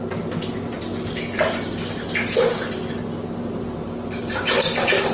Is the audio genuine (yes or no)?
yes